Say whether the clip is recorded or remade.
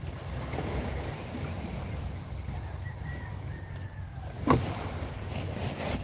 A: remade